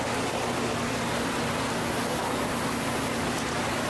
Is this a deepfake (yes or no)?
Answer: no